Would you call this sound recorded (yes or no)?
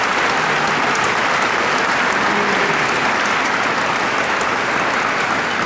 yes